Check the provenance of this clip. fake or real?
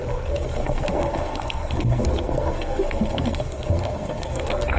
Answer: fake